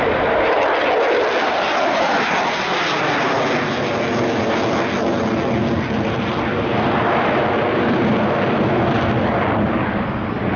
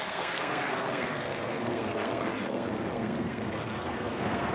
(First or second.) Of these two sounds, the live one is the first